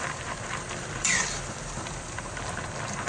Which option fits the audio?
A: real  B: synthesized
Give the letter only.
B